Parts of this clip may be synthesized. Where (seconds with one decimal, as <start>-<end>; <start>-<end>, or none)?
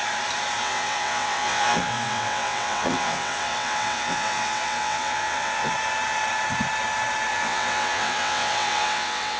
0.6-5.7; 7.3-9.4